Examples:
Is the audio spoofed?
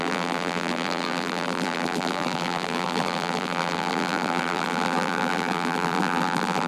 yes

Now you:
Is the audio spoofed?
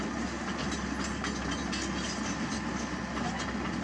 no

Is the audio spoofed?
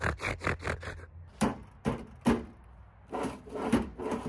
no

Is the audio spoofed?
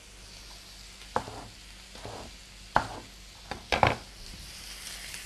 no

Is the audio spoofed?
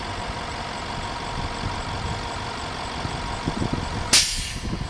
no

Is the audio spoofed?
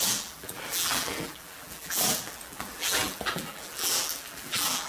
yes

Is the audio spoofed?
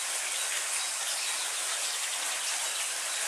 no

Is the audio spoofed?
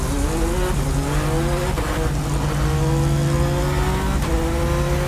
no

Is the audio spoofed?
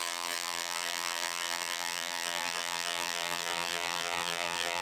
yes